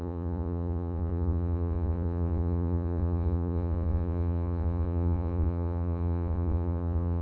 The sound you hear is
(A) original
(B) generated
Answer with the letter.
B